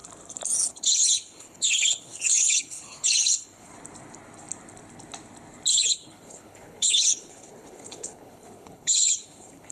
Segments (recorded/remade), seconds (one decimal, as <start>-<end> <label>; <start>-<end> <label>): 0.0-0.7 recorded; 0.7-3.7 remade; 3.7-5.7 recorded; 5.7-9.7 remade